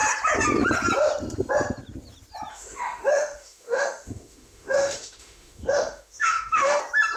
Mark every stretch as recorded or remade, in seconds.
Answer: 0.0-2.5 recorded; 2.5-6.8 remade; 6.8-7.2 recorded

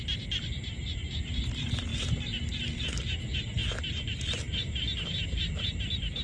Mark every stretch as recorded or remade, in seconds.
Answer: 0.0-6.2 recorded

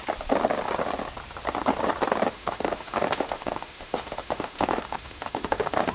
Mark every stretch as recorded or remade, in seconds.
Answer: 0.0-2.3 recorded; 2.3-5.9 remade

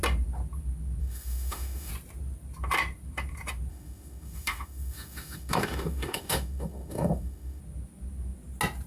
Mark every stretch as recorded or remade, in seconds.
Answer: 0.0-1.0 recorded; 1.0-1.9 remade; 1.9-3.7 recorded; 3.7-7.6 remade; 7.6-8.9 recorded

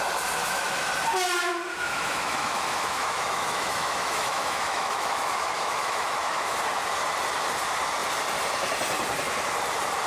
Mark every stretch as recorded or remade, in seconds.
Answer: 0.0-0.4 recorded; 0.4-0.9 remade; 0.9-1.7 recorded; 1.7-6.6 remade; 6.6-10.1 recorded